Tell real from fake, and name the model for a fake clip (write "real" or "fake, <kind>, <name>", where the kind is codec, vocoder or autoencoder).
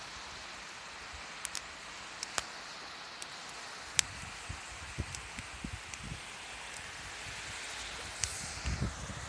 real